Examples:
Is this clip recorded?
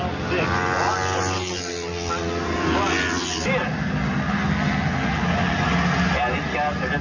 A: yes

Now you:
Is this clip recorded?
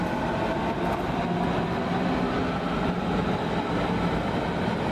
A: yes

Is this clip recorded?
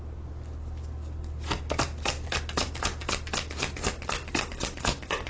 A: yes